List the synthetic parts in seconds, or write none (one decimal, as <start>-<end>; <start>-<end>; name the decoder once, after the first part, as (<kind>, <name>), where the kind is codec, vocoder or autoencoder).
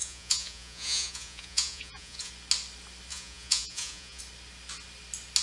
0.0-2.3 (vocoder, Vocos); 3.1-4.2